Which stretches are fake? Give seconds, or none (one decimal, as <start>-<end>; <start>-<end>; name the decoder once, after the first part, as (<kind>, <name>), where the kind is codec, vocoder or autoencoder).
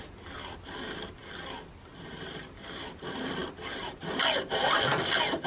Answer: none